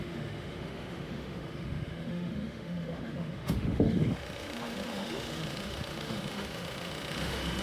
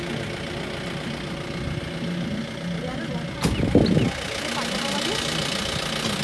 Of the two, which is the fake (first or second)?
first